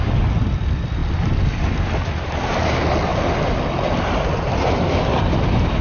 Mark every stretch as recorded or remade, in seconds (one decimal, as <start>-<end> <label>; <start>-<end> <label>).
0.0-5.8 recorded